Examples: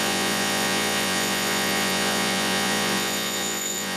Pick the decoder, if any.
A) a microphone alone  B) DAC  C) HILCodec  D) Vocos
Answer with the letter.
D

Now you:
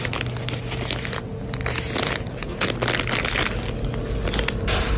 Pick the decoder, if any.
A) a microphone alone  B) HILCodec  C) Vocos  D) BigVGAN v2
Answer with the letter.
A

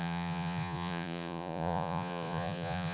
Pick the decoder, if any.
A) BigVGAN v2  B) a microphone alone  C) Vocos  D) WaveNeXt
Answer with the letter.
C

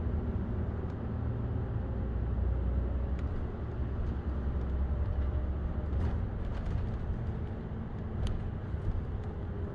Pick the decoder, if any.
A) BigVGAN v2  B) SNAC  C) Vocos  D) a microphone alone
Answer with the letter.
D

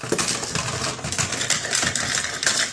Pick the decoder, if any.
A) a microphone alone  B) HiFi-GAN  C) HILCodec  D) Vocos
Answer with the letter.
A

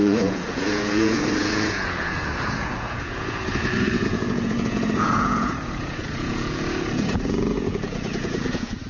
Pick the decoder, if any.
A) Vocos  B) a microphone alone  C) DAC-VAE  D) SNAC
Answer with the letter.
A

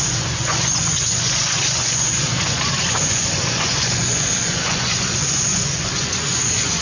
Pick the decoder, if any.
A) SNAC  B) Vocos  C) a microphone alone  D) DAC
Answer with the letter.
B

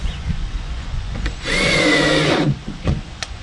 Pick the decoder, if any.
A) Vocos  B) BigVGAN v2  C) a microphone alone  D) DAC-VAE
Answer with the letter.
A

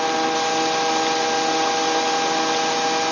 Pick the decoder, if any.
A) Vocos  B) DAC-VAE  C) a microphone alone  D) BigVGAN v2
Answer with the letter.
C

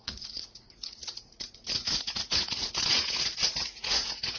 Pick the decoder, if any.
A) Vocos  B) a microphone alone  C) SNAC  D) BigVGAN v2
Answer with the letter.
A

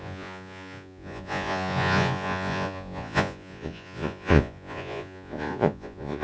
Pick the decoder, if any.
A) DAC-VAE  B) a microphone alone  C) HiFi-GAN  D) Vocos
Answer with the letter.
D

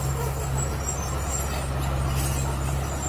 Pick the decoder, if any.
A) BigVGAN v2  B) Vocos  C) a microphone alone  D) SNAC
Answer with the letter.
C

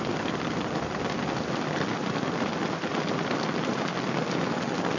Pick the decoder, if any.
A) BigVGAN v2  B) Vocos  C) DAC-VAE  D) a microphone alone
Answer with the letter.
D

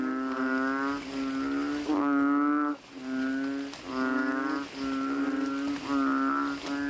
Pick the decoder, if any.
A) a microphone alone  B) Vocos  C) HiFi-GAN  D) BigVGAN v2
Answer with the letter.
A